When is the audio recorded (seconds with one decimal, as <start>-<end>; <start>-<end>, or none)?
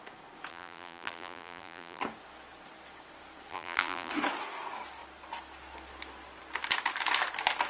0.0-0.5; 2.0-3.5; 4.1-7.7